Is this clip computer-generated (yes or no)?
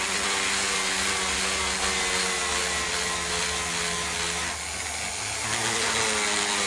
no